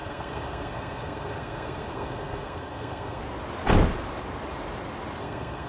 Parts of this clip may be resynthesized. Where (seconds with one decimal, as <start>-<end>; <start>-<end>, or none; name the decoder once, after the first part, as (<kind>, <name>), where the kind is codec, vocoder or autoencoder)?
0.0-3.2 (codec, SNAC); 5.2-5.7